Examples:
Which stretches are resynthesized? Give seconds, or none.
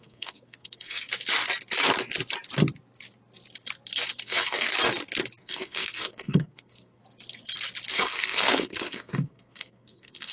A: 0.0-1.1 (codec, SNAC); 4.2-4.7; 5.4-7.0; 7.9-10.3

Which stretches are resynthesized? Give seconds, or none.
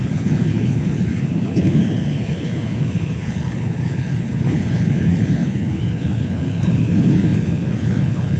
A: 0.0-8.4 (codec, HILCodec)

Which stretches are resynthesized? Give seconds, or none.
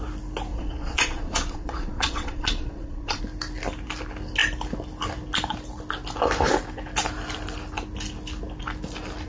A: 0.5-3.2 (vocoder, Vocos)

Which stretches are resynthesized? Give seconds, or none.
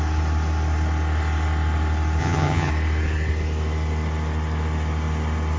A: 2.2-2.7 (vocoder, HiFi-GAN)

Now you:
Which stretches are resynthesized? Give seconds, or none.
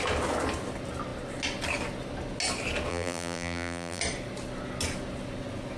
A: 2.9-4.0 (vocoder, BigVGAN v2)